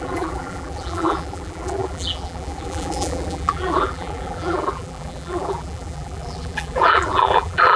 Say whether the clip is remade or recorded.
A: remade